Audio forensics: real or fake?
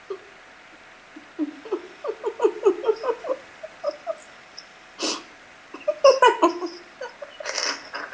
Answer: fake